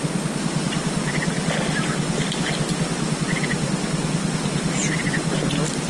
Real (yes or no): yes